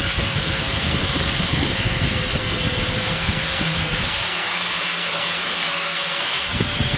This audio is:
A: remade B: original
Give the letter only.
A